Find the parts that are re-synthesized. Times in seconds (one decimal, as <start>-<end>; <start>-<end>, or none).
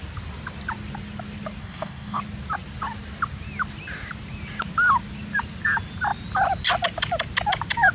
1.6-2.2